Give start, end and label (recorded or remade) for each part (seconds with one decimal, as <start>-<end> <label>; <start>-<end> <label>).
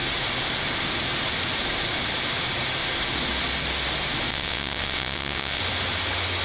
0.0-4.3 recorded; 4.3-5.6 remade; 5.6-6.4 recorded